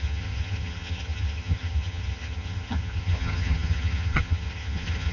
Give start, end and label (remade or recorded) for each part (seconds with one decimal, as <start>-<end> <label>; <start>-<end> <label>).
0.0-5.1 remade